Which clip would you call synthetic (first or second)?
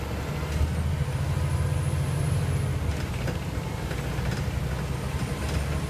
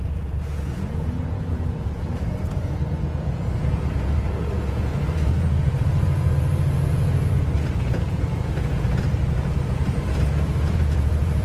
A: second